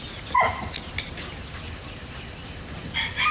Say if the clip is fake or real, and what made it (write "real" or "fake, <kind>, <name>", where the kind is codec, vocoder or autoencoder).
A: real